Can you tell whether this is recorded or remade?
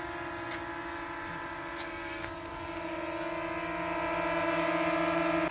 recorded